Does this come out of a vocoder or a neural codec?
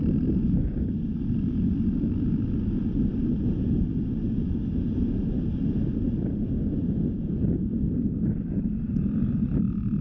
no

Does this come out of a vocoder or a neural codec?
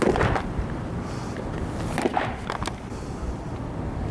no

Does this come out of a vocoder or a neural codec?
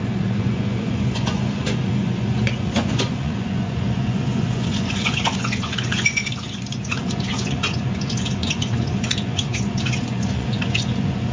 yes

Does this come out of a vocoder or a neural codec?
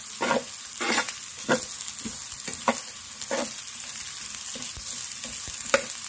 no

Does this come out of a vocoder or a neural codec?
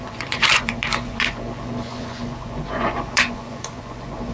yes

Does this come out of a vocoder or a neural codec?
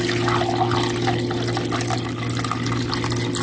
no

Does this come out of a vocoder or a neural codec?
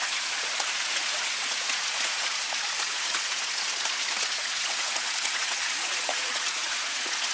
yes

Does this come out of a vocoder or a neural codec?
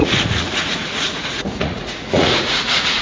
yes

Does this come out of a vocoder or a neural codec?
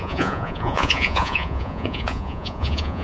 yes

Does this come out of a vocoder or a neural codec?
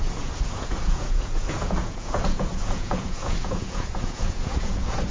yes